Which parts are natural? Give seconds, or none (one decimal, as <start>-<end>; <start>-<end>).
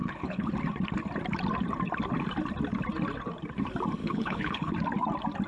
0.5-4.0; 4.7-5.5